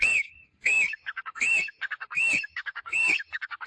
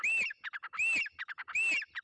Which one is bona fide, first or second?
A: second